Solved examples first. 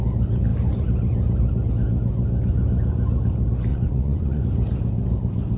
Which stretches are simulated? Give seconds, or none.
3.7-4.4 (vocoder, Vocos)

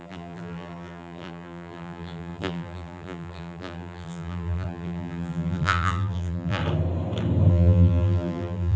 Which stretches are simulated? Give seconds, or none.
0.0-6.6 (vocoder, BigVGAN v2); 7.5-8.8

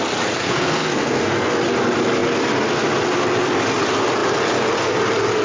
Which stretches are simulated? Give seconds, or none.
0.4-1.5 (codec, SNAC)

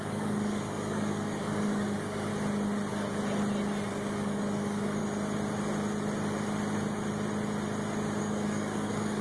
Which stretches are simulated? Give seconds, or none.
0.0-2.3 (codec, DAC); 3.9-5.0; 8.2-9.2

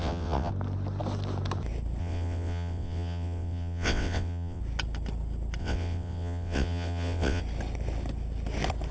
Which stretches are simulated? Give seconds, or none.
0.0-0.5 (vocoder, WaveNeXt); 2.0-4.6; 5.6-7.4